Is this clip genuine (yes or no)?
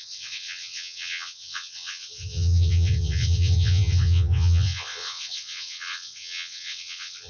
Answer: no